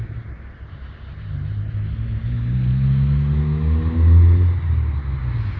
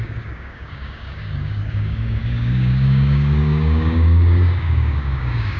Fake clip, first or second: second